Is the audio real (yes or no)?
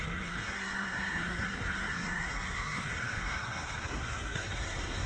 no